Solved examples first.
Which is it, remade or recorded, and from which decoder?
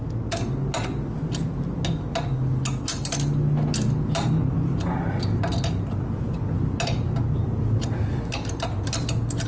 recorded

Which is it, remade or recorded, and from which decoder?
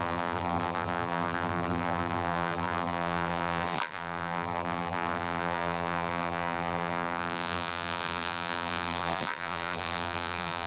remade, vocoder, BigVGAN v2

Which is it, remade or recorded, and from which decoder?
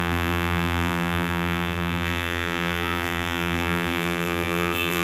remade, vocoder, BigVGAN v2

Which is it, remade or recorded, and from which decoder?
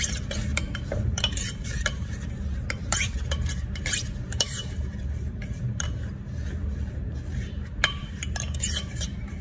remade, vocoder, BigVGAN v2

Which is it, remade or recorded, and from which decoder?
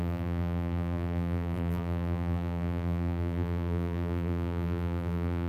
remade, vocoder, BigVGAN v2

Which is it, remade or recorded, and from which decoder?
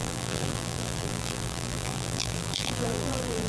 remade, vocoder, BigVGAN v2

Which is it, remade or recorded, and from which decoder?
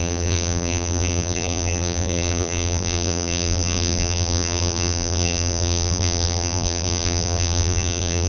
remade, vocoder, BigVGAN v2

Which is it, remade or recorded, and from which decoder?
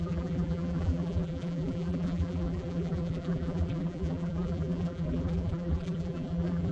remade, vocoder, BigVGAN v2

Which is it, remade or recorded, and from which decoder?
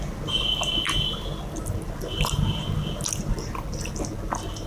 recorded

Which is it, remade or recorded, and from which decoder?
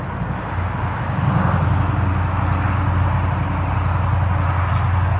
recorded